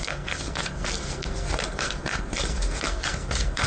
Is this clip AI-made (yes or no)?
yes